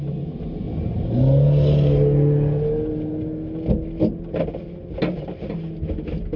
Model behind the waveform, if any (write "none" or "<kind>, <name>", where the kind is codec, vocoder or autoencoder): none